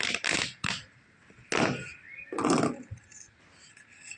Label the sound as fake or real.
real